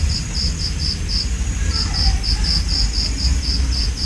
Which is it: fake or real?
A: real